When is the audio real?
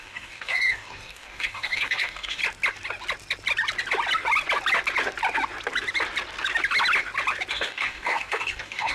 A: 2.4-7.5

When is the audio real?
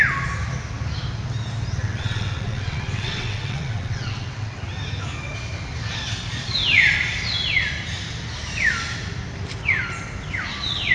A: 0.0-1.8; 4.6-10.9